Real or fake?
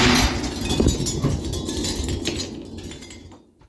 real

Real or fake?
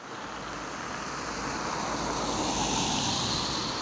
real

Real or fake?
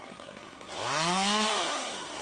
fake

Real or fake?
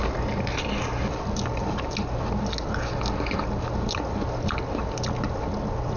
real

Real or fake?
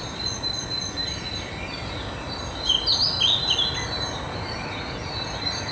real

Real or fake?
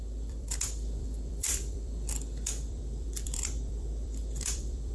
fake